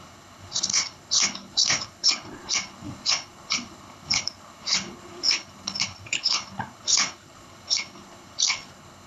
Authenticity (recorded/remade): remade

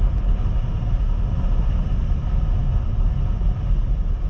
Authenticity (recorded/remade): recorded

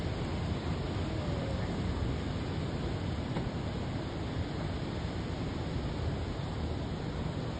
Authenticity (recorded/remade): recorded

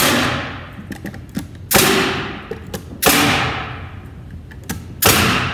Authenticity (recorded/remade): recorded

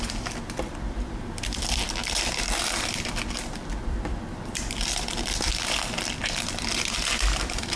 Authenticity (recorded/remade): remade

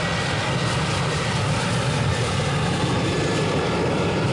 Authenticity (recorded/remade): recorded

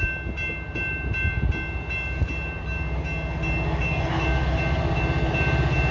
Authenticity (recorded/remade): recorded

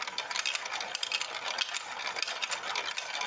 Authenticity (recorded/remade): recorded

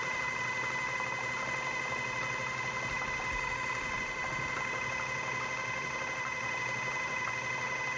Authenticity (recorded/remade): recorded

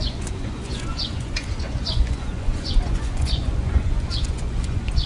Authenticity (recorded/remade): remade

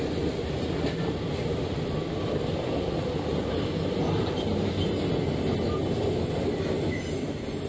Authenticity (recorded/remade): recorded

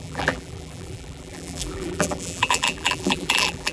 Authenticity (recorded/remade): remade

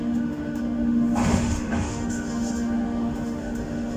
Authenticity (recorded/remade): remade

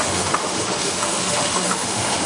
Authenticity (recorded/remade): remade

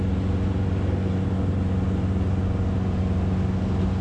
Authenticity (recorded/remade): recorded